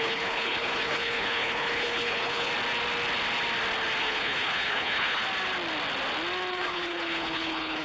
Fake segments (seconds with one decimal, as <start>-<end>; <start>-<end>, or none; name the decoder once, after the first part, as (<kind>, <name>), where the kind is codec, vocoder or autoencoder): 0.0-2.5 (codec, HILCodec); 4.0-5.2; 6.5-7.8